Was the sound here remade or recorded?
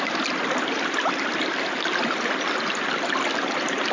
recorded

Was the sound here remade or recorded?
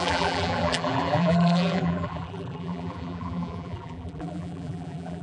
remade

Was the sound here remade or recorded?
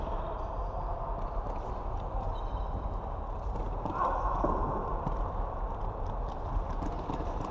recorded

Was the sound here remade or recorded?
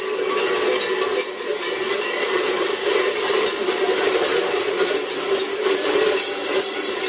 remade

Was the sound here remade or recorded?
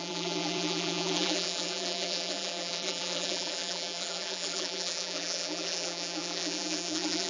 remade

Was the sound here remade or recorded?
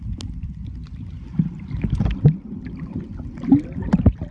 recorded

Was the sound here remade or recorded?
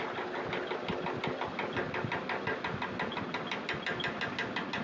recorded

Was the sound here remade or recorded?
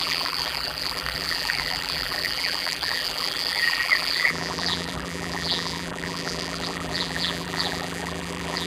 remade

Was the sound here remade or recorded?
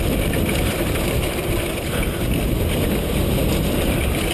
recorded